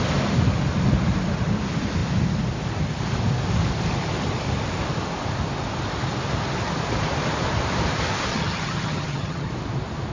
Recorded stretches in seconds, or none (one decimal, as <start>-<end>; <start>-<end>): 0.0-8.3; 9.5-10.1